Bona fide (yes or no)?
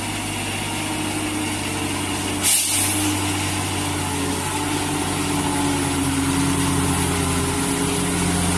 yes